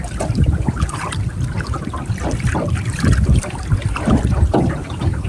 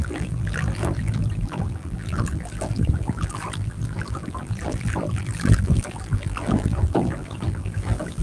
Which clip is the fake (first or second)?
second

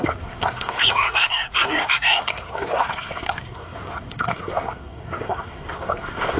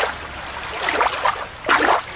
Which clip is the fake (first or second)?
first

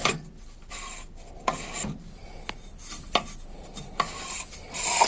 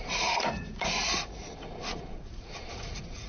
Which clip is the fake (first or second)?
second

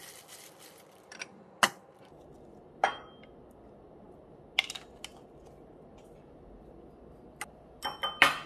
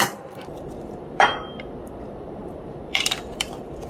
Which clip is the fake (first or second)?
second